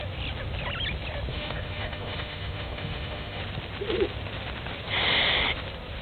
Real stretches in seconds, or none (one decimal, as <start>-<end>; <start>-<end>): 0.0-1.3; 3.4-6.0